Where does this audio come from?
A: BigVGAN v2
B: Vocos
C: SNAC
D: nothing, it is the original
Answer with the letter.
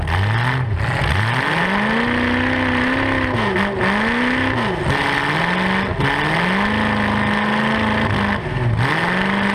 D